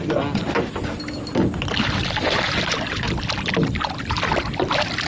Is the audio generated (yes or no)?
no